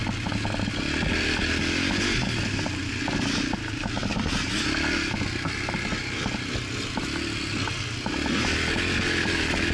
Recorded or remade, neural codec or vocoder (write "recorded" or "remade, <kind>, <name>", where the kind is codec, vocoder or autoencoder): recorded